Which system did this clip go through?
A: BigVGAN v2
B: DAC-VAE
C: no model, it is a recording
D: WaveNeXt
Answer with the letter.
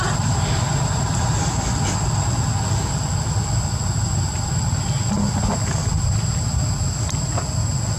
C